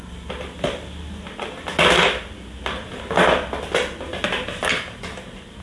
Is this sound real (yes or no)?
yes